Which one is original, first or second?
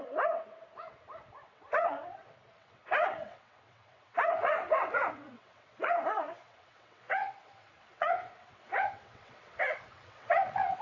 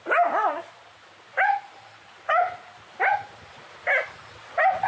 second